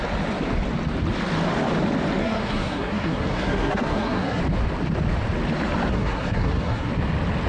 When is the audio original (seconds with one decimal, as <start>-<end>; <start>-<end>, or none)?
0.0-2.2; 4.4-5.9; 6.9-7.5